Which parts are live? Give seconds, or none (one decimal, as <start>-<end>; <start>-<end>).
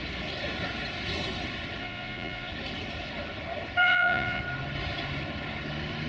0.0-1.8; 2.5-3.8; 4.4-6.1